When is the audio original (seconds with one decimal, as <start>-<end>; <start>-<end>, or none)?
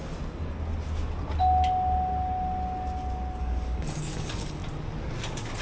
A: 0.0-3.4; 4.6-5.6